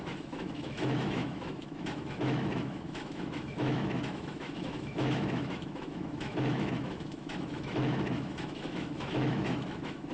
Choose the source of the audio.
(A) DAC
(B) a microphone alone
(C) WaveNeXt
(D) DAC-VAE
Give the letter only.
D